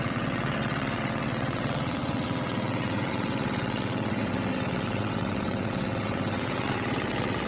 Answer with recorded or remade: remade